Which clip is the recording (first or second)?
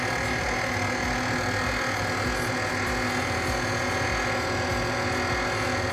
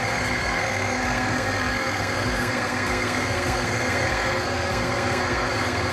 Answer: first